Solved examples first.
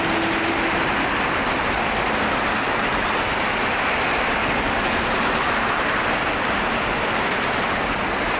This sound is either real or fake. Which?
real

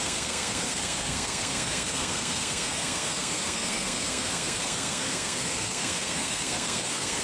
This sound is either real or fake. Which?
fake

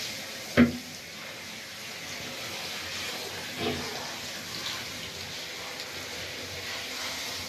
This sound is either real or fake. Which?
real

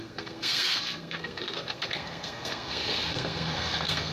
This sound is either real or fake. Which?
fake